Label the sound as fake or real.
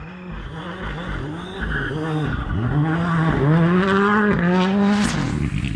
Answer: real